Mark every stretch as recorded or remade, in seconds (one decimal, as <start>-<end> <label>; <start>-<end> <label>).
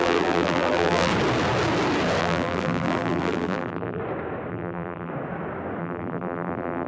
0.0-1.1 remade; 1.1-2.2 recorded; 2.2-4.0 remade; 4.0-4.5 recorded; 4.5-5.1 remade; 5.1-5.8 recorded; 5.8-6.9 remade